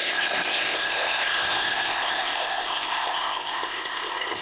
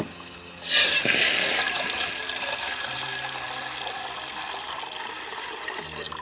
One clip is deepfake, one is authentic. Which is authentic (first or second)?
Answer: second